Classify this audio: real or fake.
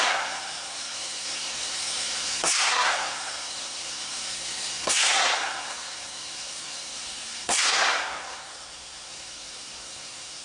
fake